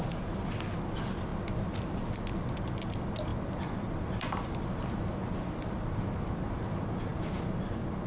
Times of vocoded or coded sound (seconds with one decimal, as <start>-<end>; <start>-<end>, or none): 3.3-4.6